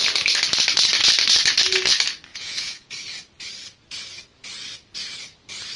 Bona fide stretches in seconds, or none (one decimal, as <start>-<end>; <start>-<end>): 0.0-2.3; 2.9-5.8